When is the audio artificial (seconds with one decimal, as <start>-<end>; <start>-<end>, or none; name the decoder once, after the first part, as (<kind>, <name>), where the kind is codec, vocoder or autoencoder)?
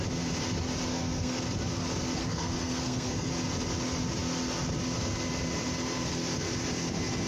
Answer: 0.9-1.4 (codec, SNAC); 2.2-3.3